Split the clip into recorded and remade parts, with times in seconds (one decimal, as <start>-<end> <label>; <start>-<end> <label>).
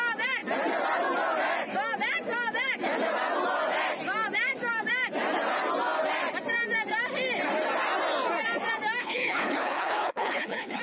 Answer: 0.0-9.0 recorded; 9.0-10.8 remade